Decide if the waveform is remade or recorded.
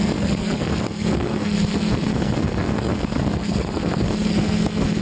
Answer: remade